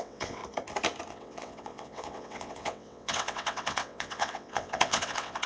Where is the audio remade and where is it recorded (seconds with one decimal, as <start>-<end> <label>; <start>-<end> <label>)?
0.0-0.4 remade; 0.4-1.1 recorded; 1.1-5.5 remade